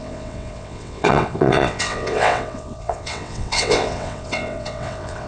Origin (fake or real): fake